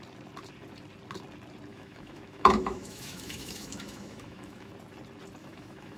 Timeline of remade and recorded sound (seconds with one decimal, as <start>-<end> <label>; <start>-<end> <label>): 0.0-1.7 recorded; 1.7-4.7 remade; 4.7-5.4 recorded; 5.4-6.0 remade